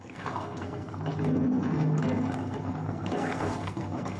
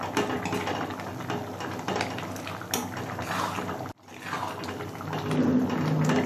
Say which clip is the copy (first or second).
first